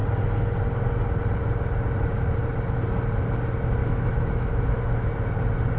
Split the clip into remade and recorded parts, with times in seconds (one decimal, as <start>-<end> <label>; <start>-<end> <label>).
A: 0.0-3.8 recorded; 3.8-5.1 remade; 5.1-5.8 recorded